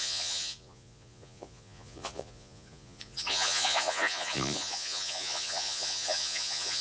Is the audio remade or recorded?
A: remade